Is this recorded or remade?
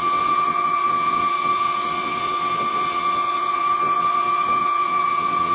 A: remade